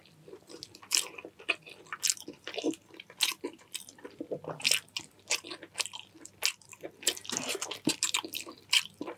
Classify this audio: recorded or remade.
recorded